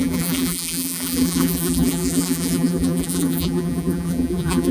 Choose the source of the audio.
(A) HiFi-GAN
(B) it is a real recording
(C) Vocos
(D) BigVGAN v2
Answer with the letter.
D